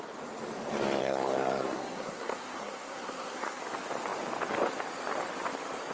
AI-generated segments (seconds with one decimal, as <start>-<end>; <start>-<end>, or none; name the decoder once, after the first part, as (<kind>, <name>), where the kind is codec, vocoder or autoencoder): 1.0-3.6 (codec, SNAC)